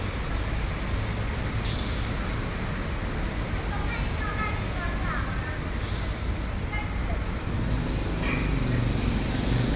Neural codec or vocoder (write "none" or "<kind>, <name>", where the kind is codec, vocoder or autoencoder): none